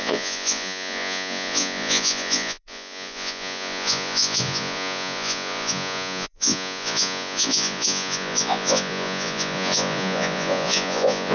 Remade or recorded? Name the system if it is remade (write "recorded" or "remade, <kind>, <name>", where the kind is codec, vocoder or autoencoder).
remade, vocoder, Vocos